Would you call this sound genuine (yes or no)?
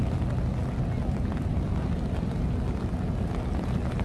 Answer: yes